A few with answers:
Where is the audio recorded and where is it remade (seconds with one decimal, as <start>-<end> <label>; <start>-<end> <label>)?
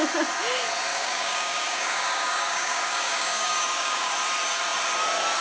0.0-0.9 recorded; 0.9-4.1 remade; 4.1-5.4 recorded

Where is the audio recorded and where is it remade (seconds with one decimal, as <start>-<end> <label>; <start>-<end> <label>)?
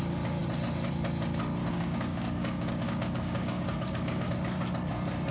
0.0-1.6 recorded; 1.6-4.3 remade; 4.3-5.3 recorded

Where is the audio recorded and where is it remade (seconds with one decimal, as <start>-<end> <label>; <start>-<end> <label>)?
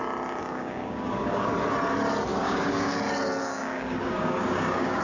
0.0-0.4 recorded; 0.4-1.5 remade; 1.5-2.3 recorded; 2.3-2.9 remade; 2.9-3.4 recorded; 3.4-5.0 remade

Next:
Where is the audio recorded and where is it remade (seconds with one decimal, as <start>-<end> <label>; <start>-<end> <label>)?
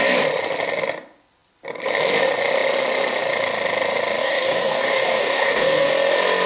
0.0-4.2 recorded; 4.2-5.9 remade; 5.9-6.5 recorded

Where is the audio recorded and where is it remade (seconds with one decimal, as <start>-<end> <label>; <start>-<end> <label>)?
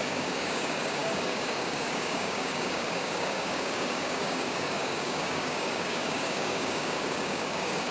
0.0-7.9 remade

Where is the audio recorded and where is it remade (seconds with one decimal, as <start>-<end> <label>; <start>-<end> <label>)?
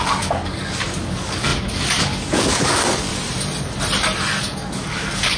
0.0-3.1 remade; 3.1-4.4 recorded; 4.4-5.4 remade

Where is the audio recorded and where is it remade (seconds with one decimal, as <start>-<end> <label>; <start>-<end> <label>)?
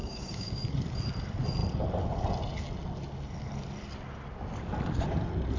0.0-0.6 remade; 0.6-5.6 recorded